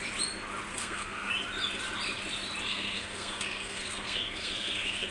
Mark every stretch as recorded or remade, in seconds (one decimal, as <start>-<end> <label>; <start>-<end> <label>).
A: 0.0-0.7 recorded; 0.7-1.3 remade; 1.3-2.7 recorded; 2.7-5.1 remade